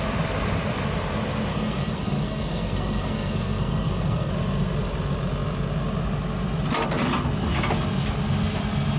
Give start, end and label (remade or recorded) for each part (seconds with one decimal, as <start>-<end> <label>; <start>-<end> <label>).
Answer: 0.0-1.5 recorded; 1.5-4.3 remade; 4.3-9.0 recorded